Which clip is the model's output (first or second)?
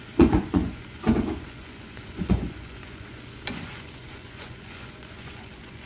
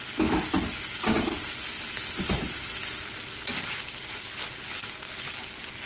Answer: first